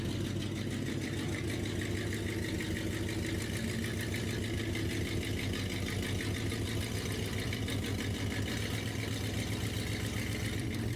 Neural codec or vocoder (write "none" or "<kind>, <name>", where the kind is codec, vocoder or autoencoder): none